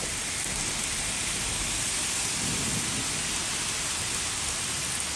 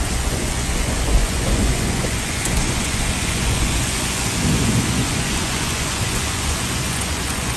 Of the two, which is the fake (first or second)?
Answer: second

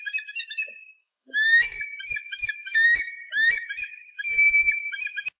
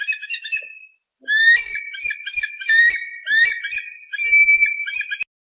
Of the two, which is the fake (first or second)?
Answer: first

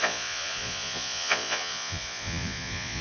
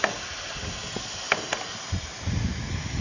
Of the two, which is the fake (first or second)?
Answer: first